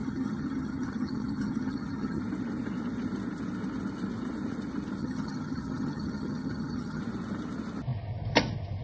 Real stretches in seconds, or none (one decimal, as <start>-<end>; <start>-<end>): 2.2-5.0; 7.0-8.8